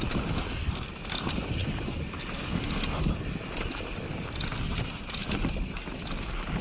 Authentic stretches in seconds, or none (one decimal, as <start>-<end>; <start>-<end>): 0.0-6.6